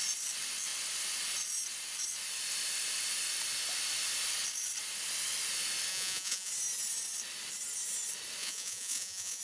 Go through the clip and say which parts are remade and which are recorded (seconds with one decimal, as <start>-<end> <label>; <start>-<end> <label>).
0.0-5.9 recorded; 5.9-6.5 remade; 6.5-8.4 recorded; 8.4-9.4 remade